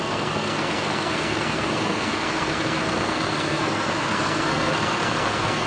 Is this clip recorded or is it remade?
remade